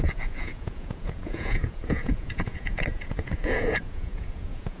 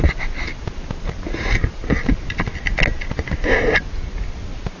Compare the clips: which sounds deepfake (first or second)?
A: first